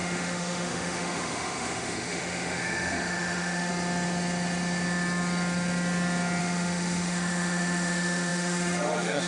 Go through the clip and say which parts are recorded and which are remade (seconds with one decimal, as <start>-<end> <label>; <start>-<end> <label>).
0.0-3.7 remade; 3.7-6.4 recorded; 6.4-9.3 remade